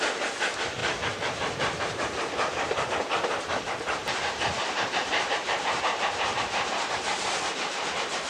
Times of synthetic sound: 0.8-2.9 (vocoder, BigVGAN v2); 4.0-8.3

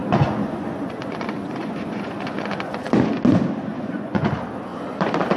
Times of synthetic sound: 0.0-3.2 (vocoder, Vocos); 3.7-4.3; 4.7-5.4